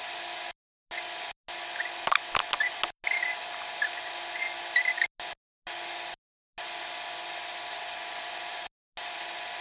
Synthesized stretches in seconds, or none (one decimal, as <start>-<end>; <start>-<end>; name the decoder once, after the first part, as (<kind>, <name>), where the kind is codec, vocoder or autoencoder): none